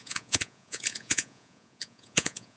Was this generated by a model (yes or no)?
yes